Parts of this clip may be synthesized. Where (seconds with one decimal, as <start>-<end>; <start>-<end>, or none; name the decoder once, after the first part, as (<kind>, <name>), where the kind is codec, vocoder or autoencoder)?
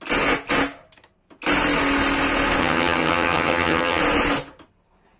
2.6-4.0 (vocoder, HiFi-GAN)